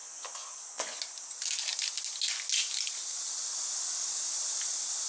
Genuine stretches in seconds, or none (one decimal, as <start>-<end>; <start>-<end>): 1.0-5.1